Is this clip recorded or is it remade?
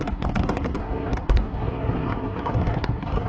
remade